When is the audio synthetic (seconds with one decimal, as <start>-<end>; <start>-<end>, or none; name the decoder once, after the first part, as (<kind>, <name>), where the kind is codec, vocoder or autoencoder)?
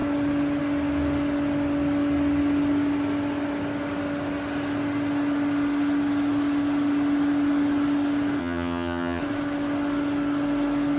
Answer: 8.4-9.2 (vocoder, HiFi-GAN)